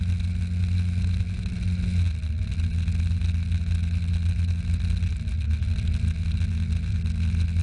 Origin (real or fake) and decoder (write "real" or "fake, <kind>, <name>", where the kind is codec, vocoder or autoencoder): real